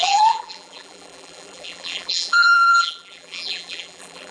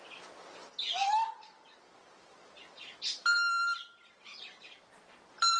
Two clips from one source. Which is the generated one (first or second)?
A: first